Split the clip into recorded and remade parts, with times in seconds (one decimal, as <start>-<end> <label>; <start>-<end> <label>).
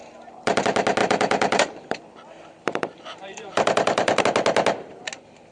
0.0-0.6 remade; 0.6-1.0 recorded; 1.0-4.2 remade; 4.2-5.5 recorded